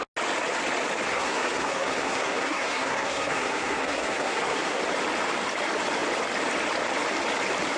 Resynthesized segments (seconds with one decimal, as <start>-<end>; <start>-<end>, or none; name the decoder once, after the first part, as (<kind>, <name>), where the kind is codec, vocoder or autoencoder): 1.1-4.8 (codec, SNAC)